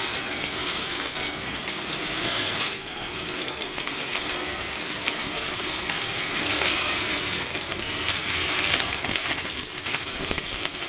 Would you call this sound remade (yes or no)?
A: yes